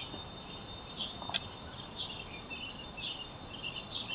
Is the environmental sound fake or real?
real